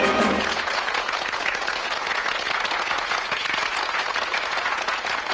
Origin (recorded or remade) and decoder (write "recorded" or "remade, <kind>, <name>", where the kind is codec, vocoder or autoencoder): remade, vocoder, Vocos